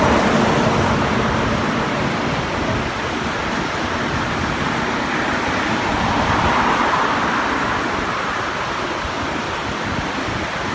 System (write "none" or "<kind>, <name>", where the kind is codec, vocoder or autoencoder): none